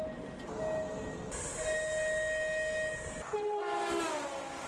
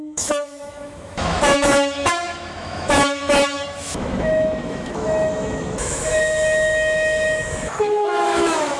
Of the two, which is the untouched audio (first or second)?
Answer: first